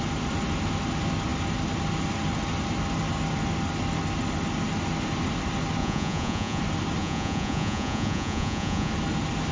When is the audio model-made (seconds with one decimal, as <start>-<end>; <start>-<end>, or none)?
5.8-6.6; 7.0-8.9